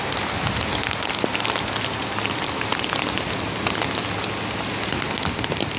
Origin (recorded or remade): recorded